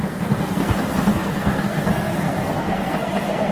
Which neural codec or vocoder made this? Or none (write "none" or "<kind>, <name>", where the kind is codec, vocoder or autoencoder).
codec, SNAC